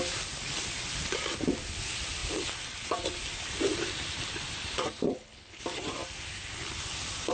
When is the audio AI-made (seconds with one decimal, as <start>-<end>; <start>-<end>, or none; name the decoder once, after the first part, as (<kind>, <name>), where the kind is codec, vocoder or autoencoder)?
5.1-5.6 (codec, HILCodec)